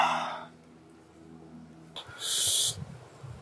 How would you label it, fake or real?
real